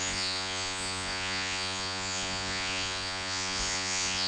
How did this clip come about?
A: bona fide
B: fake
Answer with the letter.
B